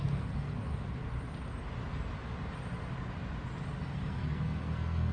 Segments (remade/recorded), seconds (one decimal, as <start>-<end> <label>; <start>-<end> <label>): 0.0-0.7 remade; 0.7-3.8 recorded; 3.8-5.1 remade

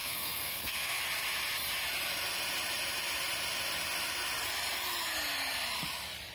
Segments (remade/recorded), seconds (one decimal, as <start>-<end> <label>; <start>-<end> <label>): 0.0-1.0 remade; 1.0-6.3 recorded

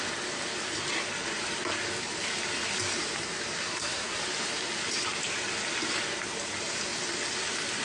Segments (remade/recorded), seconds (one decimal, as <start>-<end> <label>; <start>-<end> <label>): 0.0-3.6 recorded; 3.6-4.2 remade; 4.2-7.8 recorded

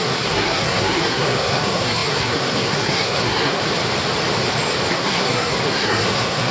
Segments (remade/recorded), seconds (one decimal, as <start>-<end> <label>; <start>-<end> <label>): 0.0-3.6 remade; 3.6-4.9 recorded; 4.9-6.5 remade

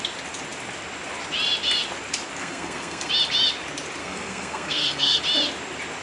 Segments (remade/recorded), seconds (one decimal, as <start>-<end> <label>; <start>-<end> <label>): 0.0-2.4 recorded; 2.4-3.1 remade; 3.1-4.0 recorded; 4.0-5.2 remade; 5.2-6.0 recorded

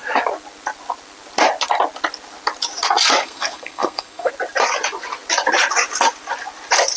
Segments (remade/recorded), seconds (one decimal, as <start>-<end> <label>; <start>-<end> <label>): 0.0-3.2 recorded; 3.2-4.3 remade; 4.3-7.0 recorded

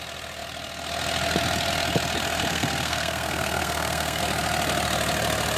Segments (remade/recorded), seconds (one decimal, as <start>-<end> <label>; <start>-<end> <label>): 0.0-2.5 recorded; 2.5-4.2 remade; 4.2-5.6 recorded

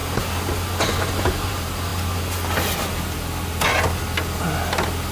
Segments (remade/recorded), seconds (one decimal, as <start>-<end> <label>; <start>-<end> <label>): 0.0-5.1 recorded